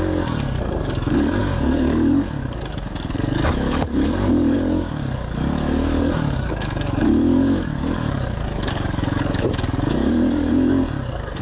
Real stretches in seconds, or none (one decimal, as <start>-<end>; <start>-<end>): none